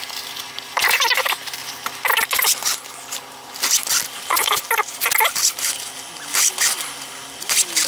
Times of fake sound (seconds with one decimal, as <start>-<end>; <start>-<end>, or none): none